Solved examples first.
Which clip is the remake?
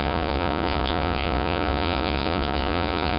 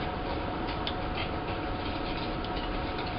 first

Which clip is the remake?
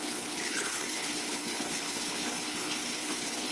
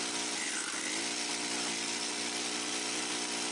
first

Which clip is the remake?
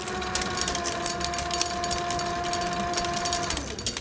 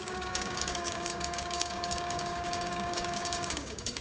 second